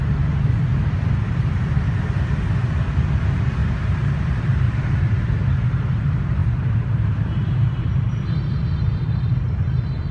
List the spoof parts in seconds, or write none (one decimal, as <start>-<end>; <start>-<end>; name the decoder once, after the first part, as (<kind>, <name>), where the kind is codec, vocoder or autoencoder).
3.6-5.2 (vocoder, BigVGAN v2); 6.4-10.1